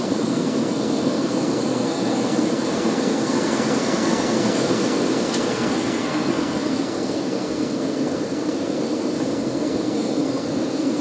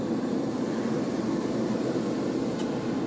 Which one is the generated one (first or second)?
first